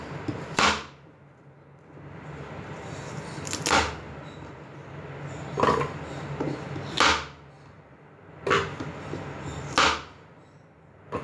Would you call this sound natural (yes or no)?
yes